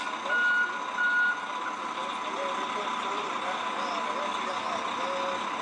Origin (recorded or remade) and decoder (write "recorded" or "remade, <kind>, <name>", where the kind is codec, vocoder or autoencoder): recorded